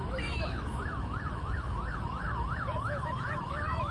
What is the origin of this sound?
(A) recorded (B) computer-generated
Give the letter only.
B